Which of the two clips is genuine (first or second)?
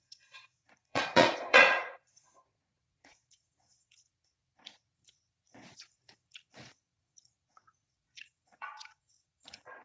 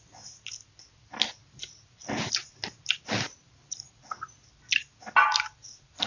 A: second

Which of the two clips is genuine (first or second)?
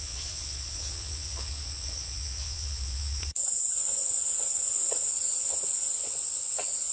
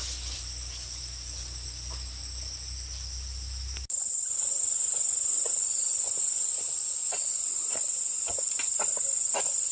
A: second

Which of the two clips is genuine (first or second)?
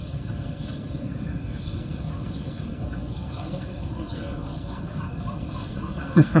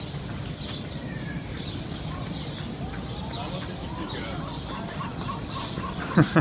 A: second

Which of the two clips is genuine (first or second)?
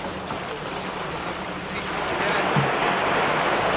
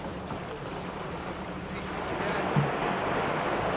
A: first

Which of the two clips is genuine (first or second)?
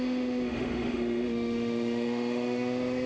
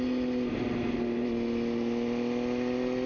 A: second